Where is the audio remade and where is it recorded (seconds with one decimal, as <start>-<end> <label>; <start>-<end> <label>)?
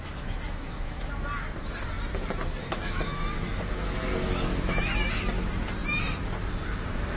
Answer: 0.0-1.1 remade; 1.1-2.6 recorded; 2.6-5.1 remade; 5.1-7.2 recorded